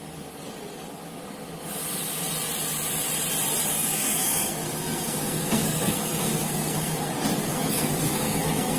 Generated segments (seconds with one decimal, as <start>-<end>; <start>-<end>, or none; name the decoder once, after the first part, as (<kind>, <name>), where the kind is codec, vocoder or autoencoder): 3.7-7.1 (codec, SNAC); 7.5-8.8